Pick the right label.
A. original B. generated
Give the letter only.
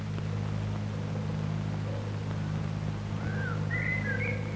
A